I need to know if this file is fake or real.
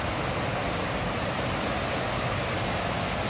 real